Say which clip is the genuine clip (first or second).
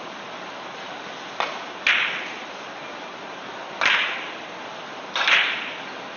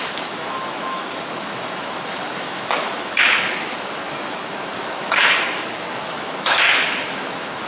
first